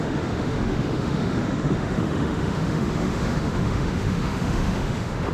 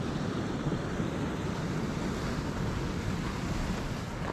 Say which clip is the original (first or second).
second